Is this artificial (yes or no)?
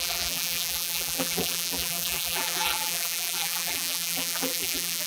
yes